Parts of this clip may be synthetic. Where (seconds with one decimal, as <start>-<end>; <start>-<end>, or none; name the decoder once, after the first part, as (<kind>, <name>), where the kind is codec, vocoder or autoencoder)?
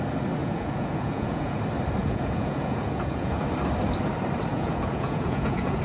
0.4-1.5 (vocoder, Vocos); 2.0-3.4; 4.5-5.8